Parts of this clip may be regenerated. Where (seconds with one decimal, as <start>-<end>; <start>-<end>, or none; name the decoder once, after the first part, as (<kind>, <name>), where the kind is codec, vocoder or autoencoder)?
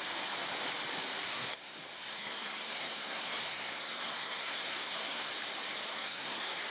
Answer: 1.3-5.3 (codec, SNAC); 5.9-6.7